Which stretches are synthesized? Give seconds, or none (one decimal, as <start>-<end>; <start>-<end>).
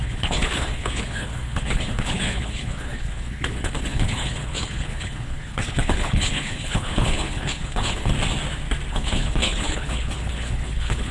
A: 0.0-8.1; 8.9-11.1